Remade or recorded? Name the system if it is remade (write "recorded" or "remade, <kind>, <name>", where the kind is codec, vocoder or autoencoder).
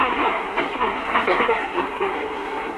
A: remade, codec, SNAC